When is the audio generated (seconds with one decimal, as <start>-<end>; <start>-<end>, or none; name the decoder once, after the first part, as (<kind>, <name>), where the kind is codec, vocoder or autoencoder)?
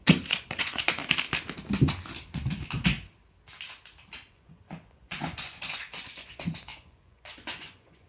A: 0.0-1.0 (vocoder, Vocos); 4.3-8.1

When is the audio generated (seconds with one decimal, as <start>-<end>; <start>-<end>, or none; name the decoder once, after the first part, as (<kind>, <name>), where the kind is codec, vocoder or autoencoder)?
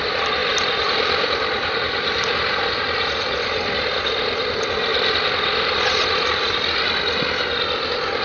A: 0.4-2.6 (vocoder, BigVGAN v2)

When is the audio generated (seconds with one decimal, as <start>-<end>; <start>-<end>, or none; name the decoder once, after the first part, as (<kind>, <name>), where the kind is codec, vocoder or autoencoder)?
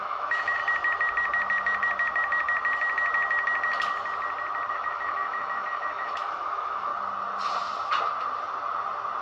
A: 0.0-0.6 (autoencoder, DAC-VAE); 4.7-6.9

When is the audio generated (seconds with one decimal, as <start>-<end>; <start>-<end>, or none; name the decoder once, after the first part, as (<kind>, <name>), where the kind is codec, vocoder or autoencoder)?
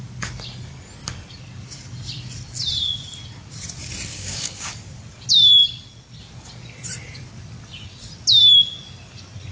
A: 4.1-4.7 (codec, DAC)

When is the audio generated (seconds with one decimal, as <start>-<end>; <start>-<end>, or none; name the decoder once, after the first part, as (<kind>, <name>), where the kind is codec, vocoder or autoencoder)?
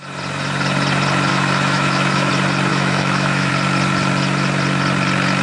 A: 1.3-2.3 (autoencoder, DAC-VAE); 2.7-3.5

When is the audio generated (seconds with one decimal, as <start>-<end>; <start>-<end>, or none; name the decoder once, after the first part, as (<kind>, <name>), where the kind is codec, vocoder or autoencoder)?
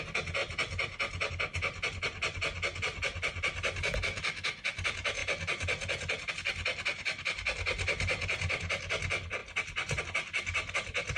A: none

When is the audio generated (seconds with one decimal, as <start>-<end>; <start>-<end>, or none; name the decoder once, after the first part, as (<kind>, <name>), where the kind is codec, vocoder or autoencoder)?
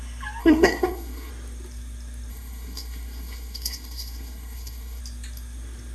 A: 0.4-1.3 (codec, SNAC); 2.3-5.0